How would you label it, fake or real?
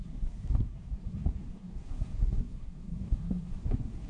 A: fake